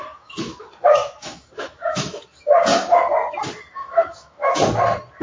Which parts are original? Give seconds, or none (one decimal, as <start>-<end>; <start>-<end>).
2.7-3.7; 4.5-5.2